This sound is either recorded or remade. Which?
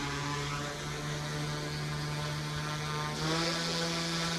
recorded